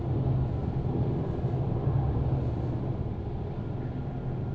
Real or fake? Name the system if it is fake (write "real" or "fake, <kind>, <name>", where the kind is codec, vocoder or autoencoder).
real